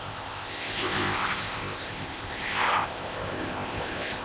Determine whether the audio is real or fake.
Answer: fake